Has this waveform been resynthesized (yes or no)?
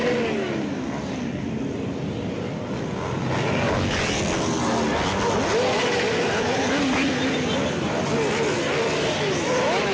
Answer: no